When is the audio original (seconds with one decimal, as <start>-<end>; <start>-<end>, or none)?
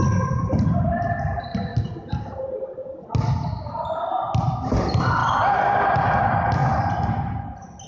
0.0-1.7; 2.7-7.9